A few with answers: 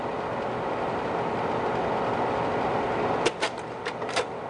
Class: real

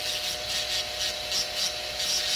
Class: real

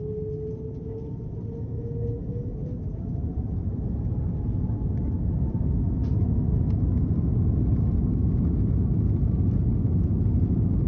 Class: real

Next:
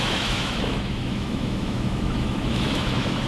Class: fake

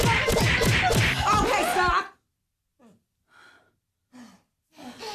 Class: real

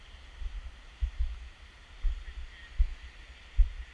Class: real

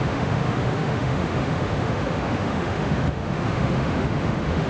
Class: fake